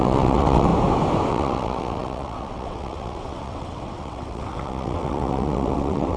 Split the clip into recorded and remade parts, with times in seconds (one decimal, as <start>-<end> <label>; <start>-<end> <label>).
0.0-0.7 remade; 0.7-1.3 recorded; 1.3-6.2 remade